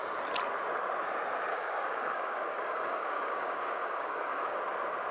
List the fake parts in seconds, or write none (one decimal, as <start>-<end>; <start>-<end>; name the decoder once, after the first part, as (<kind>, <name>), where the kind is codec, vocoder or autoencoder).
1.5-4.6 (codec, DAC)